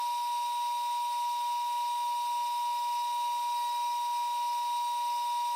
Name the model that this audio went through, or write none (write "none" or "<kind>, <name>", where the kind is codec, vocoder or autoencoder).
none